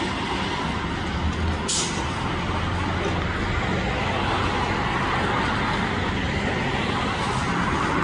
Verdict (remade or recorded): recorded